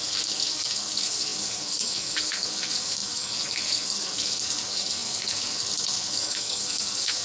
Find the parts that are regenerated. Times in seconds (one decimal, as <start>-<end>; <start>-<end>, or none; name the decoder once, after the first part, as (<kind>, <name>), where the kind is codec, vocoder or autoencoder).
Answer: 0.0-7.2 (codec, SNAC)